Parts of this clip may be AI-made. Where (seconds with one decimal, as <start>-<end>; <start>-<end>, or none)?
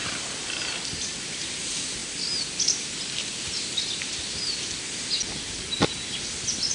none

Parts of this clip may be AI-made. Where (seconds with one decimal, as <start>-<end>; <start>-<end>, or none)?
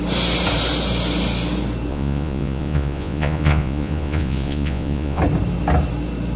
1.9-5.2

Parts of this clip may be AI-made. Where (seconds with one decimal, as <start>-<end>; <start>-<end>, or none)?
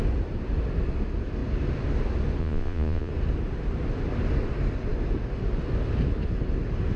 2.4-3.1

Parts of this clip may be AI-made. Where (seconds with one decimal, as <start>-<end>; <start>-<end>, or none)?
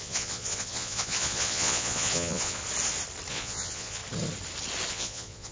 0.0-2.6; 3.3-4.0; 4.9-5.5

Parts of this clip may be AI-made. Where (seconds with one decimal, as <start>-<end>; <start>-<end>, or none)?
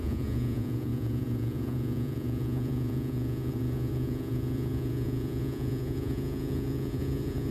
0.0-7.5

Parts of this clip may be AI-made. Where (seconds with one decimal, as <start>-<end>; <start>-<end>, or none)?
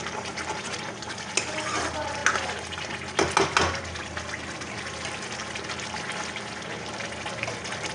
none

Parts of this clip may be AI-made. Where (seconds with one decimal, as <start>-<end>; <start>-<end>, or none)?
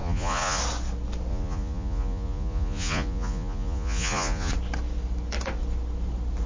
0.0-0.6; 1.3-4.5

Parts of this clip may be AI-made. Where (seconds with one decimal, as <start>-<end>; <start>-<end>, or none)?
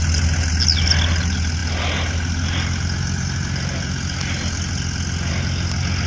none